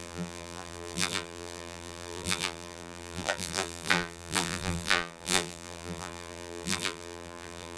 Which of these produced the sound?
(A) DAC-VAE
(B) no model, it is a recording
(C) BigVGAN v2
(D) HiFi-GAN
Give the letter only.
C